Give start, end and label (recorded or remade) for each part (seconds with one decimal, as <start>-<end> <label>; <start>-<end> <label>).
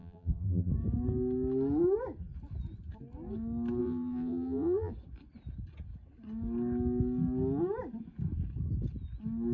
0.0-0.7 remade; 0.7-3.8 recorded; 3.8-4.9 remade; 4.9-9.5 recorded